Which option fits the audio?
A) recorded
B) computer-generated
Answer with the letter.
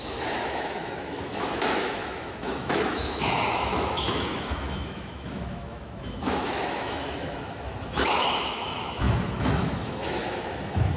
B